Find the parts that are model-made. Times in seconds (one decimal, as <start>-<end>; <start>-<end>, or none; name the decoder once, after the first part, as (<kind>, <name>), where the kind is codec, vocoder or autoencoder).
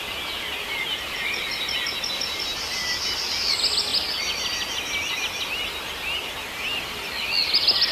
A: none